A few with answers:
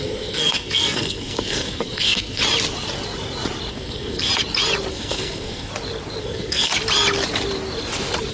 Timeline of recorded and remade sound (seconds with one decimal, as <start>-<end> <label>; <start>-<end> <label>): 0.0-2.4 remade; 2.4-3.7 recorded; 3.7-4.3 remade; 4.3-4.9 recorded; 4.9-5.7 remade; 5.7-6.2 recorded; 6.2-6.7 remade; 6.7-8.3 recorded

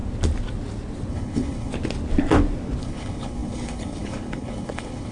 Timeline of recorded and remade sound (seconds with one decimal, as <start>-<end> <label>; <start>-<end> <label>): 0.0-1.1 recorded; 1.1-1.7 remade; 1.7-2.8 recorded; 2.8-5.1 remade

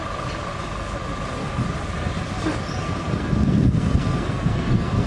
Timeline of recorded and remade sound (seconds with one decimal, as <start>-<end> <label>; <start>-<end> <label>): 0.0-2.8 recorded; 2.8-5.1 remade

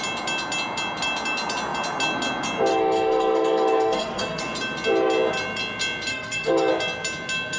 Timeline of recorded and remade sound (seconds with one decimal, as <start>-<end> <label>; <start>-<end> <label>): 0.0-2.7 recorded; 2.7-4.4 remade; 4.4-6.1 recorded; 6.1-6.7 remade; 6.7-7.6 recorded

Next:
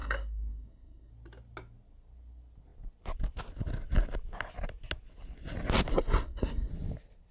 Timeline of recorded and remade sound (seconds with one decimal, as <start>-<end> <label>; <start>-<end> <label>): 0.0-1.1 remade; 1.1-5.9 recorded; 5.9-6.7 remade; 6.7-7.3 recorded

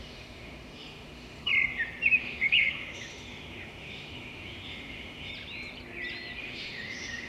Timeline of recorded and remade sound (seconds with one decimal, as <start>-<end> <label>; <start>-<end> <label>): 0.0-1.5 remade; 1.5-2.2 recorded; 2.2-5.3 remade; 5.3-6.4 recorded; 6.4-7.3 remade

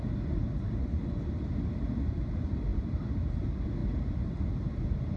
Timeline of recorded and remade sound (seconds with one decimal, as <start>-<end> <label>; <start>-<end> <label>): 0.0-2.7 recorded; 2.7-3.3 remade; 3.3-3.8 recorded; 3.8-5.2 remade

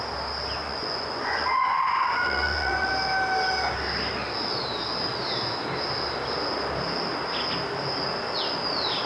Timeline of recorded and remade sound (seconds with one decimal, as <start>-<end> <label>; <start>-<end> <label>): 0.0-0.6 recorded; 0.6-2.9 remade; 2.9-9.1 recorded